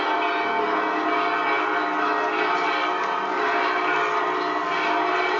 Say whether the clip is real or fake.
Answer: real